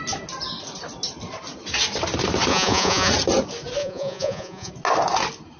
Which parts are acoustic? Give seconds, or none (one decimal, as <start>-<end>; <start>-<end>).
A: 0.0-2.5; 3.1-3.8; 4.7-5.6